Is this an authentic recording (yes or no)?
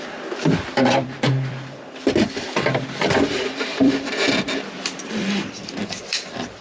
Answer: no